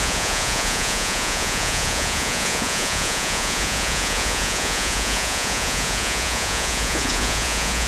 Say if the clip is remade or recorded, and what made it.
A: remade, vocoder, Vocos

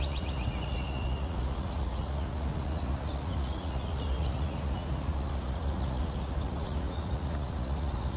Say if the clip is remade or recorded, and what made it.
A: remade, vocoder, Vocos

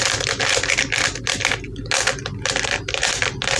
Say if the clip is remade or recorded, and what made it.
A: recorded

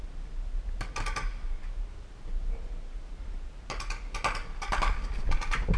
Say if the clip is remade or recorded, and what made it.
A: recorded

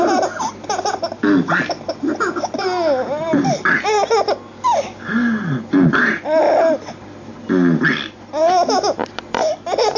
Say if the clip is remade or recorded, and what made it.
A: recorded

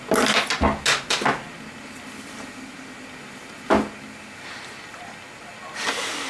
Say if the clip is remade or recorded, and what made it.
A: recorded